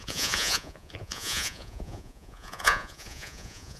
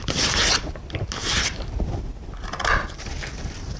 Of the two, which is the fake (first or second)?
first